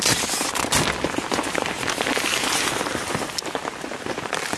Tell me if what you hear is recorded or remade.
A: recorded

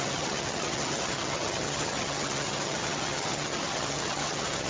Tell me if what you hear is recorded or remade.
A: remade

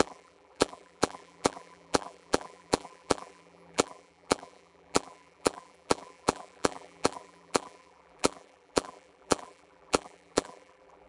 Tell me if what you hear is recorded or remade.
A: remade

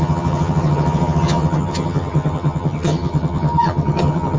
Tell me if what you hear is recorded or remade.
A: remade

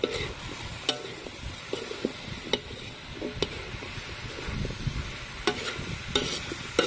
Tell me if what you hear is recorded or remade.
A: recorded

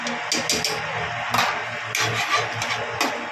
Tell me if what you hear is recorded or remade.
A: recorded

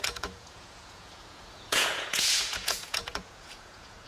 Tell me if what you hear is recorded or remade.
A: remade